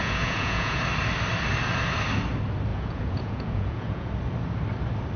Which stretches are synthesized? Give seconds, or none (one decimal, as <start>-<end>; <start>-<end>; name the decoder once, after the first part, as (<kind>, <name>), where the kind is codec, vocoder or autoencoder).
0.0-0.8 (vocoder, Vocos); 2.7-4.1